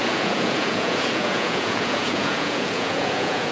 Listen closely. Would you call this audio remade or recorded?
remade